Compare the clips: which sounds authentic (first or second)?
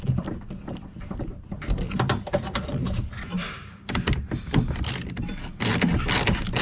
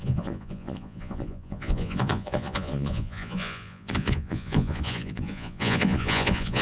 first